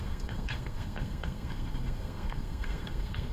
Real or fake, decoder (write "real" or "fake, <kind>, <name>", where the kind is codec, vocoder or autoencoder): fake, codec, SNAC